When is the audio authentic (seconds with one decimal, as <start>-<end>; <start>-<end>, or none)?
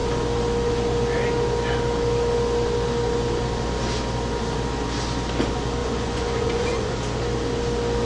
0.0-5.8; 7.0-8.1